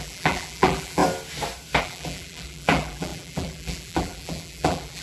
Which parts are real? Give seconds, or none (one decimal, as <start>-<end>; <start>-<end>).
1.0-1.8